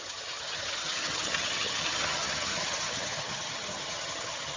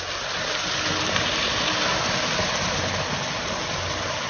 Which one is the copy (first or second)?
first